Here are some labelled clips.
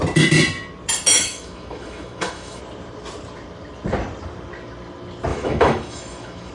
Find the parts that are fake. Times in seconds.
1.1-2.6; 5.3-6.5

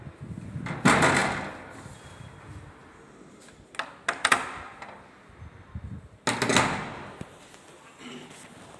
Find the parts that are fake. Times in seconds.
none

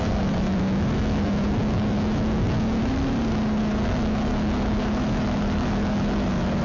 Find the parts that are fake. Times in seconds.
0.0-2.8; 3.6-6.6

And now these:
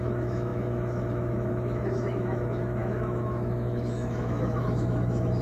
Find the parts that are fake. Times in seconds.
0.0-5.4

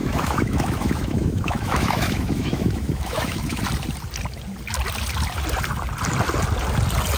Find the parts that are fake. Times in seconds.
0.0-3.6

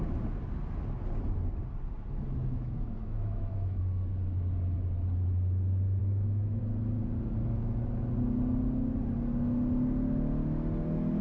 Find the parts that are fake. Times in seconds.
2.4-3.8; 6.0-6.6

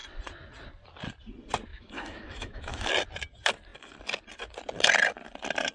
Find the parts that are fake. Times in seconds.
1.7-2.9